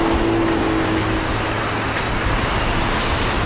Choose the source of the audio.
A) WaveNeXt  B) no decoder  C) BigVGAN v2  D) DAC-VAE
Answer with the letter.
B